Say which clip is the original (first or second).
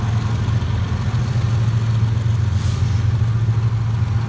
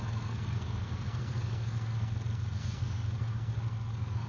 first